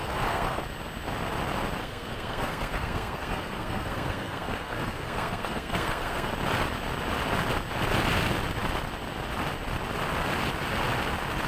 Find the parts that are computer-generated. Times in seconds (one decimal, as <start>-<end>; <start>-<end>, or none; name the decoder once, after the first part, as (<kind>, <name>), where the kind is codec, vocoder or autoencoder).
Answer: 0.0-0.6 (codec, SNAC); 1.8-6.3